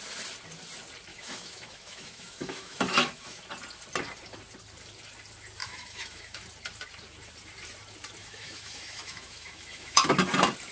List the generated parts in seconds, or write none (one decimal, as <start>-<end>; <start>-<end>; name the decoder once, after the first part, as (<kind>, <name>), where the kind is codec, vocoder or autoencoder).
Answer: 1.1-3.4 (autoencoder, DAC-VAE); 5.6-6.4; 8.2-10.1